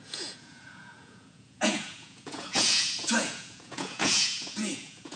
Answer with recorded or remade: remade